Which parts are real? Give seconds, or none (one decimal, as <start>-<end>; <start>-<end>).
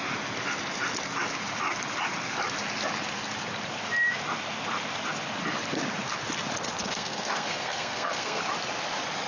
0.0-6.8; 8.4-9.3